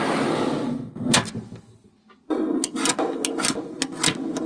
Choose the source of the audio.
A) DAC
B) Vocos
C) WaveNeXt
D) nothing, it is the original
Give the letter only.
D